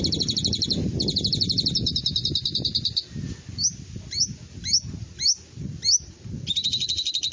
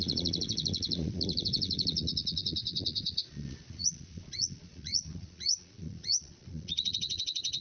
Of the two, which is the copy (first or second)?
second